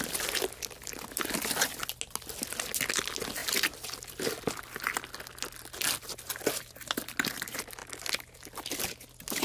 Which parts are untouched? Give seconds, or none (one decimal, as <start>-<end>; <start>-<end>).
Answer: 0.0-9.4